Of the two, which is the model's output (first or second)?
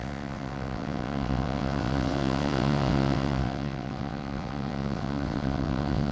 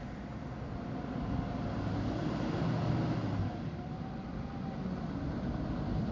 first